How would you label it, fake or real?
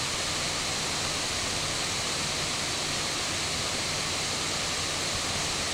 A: real